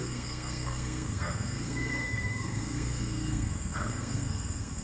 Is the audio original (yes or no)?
no